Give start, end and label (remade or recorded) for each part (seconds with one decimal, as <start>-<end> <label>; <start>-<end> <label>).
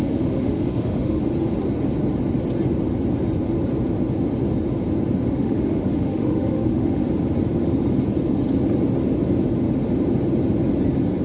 0.0-1.2 remade; 1.2-5.3 recorded; 5.3-7.0 remade; 7.0-11.2 recorded